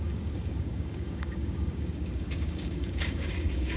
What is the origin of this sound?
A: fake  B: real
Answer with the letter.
A